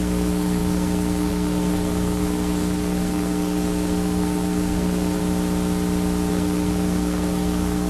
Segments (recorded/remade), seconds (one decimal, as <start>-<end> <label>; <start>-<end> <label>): 0.0-5.2 remade; 5.2-6.3 recorded; 6.3-7.9 remade